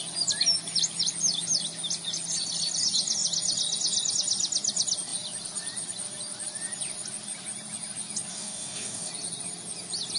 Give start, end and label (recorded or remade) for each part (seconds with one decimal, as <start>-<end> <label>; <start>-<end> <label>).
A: 0.0-8.3 recorded; 8.3-9.1 remade; 9.1-10.2 recorded